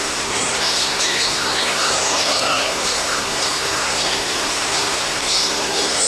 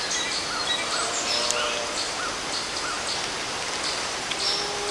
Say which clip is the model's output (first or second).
first